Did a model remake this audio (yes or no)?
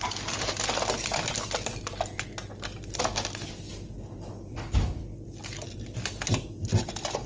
no